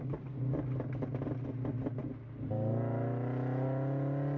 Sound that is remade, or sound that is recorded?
recorded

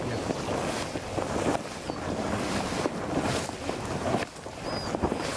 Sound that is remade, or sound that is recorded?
recorded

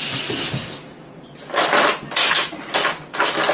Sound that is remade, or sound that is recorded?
recorded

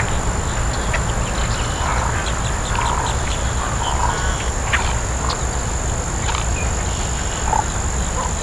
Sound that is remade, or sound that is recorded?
remade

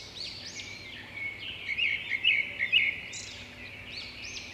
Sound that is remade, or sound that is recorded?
remade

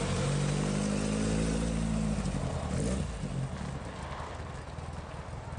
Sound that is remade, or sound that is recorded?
recorded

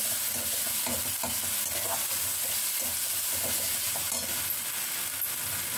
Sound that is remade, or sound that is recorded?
recorded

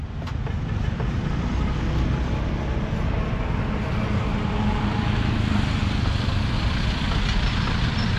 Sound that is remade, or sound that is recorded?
recorded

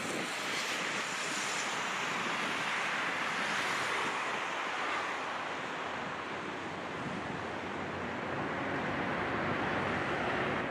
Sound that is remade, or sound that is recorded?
recorded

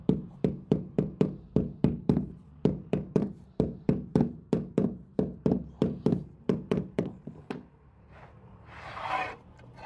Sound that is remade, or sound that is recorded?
remade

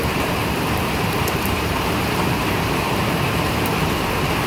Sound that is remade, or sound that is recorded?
remade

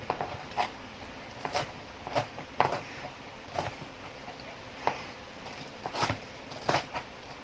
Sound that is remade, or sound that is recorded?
remade